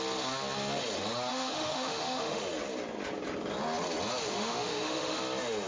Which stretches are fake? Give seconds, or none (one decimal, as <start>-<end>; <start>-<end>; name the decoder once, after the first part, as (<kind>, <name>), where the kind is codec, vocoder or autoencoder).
1.3-2.4 (autoencoder, DAC-VAE); 4.2-5.2

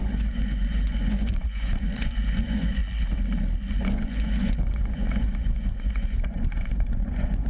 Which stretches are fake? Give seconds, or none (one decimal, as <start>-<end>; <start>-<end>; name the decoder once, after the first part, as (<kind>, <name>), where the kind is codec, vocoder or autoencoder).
0.0-2.8 (vocoder, Vocos); 3.7-7.5

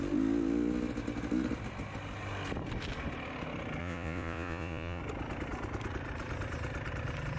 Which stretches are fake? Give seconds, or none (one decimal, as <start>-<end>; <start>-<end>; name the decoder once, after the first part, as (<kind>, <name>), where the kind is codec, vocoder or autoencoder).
3.8-5.0 (vocoder, Vocos)

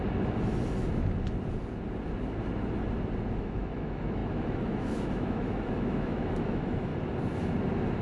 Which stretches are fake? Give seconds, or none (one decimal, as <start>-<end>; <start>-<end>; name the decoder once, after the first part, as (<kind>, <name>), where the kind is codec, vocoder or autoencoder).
3.4-6.9 (autoencoder, DAC-VAE)

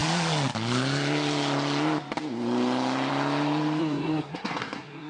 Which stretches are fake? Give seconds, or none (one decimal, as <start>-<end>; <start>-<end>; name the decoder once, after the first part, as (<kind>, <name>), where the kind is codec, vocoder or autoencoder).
3.8-5.1 (codec, SNAC)

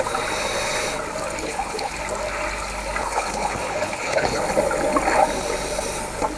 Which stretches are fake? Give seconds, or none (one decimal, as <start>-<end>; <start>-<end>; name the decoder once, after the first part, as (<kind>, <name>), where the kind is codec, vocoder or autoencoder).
1.4-1.9 (codec, HILCodec); 3.0-4.4